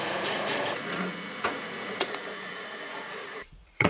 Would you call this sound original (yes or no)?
no